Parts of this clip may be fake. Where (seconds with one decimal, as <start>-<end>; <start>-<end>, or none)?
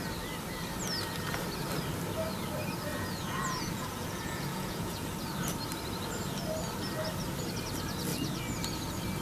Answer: 2.9-5.1